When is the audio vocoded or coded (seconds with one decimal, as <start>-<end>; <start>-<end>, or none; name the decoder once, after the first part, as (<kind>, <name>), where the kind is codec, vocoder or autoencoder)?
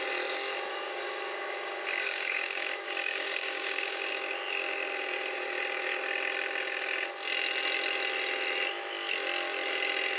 0.7-4.1 (codec, DAC)